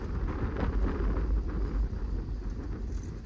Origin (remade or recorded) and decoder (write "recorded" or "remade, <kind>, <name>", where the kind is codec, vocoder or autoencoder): recorded